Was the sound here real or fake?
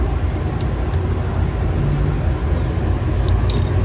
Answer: real